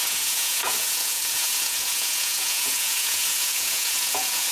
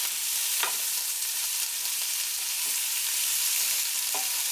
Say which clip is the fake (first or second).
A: first